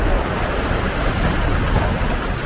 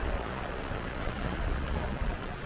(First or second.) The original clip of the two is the first